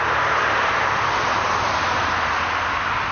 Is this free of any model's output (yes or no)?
yes